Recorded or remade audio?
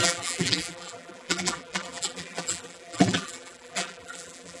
remade